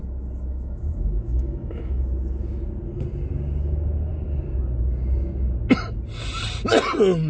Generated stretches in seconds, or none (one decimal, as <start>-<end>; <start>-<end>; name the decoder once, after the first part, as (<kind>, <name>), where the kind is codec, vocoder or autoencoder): 0.5-2.1 (autoencoder, DAC-VAE)